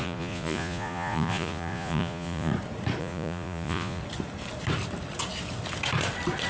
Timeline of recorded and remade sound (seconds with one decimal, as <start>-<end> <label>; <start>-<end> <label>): 0.0-2.5 remade; 2.5-3.0 recorded; 3.0-4.0 remade; 4.0-6.5 recorded